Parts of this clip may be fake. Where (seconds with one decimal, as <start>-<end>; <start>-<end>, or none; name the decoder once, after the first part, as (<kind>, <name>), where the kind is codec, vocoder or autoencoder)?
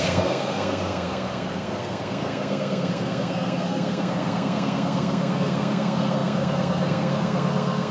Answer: 0.0-7.9 (codec, SNAC)